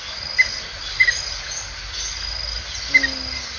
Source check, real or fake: real